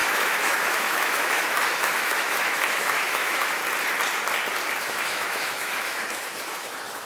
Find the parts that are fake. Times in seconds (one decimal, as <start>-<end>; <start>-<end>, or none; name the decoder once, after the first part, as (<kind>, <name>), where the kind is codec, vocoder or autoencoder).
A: 0.0-3.6 (autoencoder, DAC-VAE); 4.8-7.1